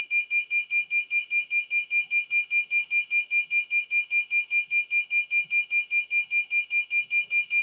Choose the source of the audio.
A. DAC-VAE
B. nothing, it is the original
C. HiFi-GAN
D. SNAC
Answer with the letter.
A